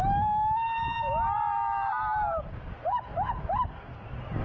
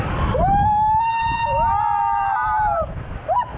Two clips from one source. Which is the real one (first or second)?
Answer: first